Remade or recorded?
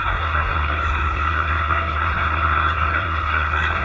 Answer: remade